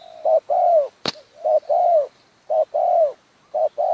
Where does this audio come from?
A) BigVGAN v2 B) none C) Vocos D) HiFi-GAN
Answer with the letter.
B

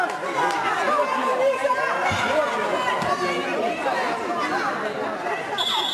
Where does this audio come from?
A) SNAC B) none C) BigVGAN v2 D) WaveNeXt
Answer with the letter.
B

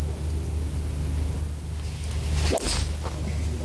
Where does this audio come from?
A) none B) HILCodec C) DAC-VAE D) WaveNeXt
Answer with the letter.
A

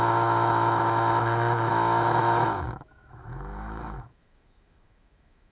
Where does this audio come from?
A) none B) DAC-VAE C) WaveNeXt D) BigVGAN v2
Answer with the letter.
B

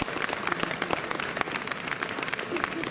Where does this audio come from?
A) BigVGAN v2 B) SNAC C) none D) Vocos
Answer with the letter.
C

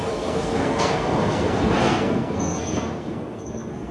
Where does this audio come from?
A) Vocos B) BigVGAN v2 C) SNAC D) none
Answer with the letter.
C